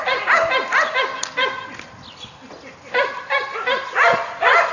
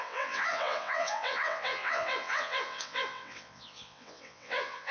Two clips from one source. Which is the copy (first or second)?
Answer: second